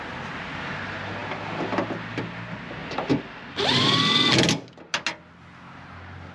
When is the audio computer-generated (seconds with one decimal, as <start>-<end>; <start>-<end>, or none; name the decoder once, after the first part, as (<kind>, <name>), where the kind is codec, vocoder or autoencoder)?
none